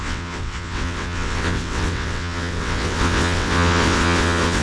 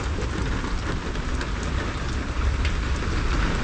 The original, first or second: second